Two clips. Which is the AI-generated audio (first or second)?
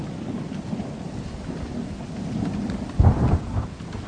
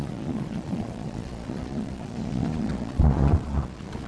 second